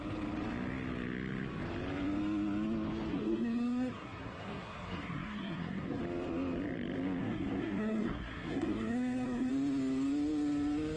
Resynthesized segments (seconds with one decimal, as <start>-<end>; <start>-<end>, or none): 3.1-6.0; 7.2-9.5

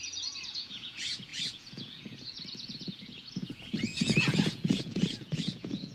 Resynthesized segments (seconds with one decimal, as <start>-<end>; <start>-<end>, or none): 0.0-5.9

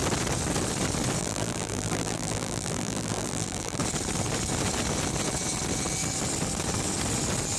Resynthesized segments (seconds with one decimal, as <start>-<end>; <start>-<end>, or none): 1.2-3.8

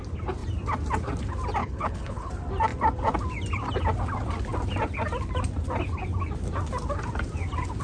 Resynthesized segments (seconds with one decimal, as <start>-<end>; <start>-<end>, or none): 1.6-2.3

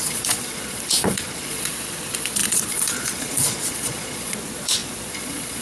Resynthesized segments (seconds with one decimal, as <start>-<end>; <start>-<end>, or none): 0.0-5.6

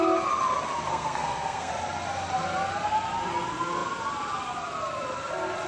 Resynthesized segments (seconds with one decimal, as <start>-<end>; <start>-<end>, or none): 0.9-1.7

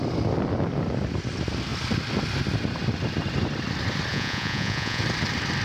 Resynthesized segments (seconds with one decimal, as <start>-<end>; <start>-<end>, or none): 4.1-5.0